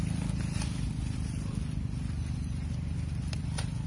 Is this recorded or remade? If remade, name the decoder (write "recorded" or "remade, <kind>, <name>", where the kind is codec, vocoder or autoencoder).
recorded